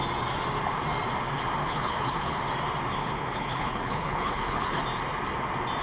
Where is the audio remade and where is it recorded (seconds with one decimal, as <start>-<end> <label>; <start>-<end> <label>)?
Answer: 0.0-1.6 recorded; 1.6-2.4 remade; 2.4-3.0 recorded; 3.0-4.8 remade; 4.8-5.8 recorded